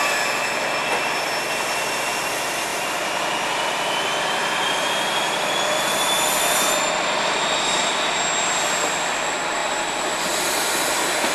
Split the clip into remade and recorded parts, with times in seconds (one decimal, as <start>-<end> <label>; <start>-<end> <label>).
0.0-2.7 recorded; 2.7-4.9 remade; 4.9-9.6 recorded; 9.6-10.2 remade; 10.2-11.3 recorded